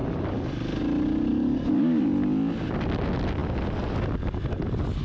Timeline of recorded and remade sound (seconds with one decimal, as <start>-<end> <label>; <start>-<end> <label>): 0.0-1.3 recorded; 1.3-2.0 remade; 2.0-5.0 recorded